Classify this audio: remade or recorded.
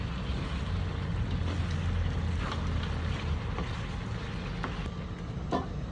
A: recorded